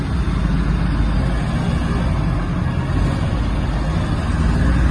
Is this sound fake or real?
real